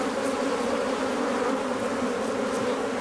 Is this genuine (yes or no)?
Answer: yes